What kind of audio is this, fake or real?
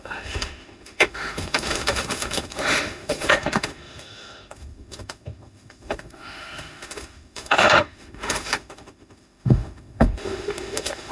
fake